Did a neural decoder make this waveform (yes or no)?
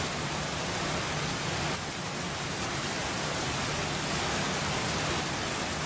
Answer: no